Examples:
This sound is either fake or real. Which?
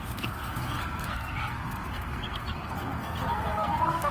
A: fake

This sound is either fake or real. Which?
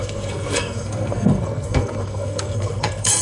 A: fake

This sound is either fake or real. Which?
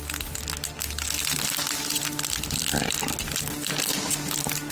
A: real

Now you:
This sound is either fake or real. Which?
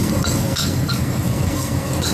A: fake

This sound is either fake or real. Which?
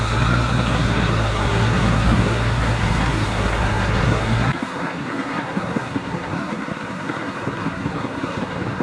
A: fake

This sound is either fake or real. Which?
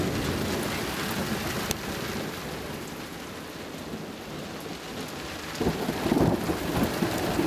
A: real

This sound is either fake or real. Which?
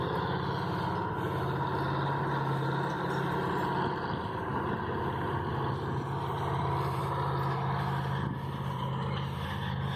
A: real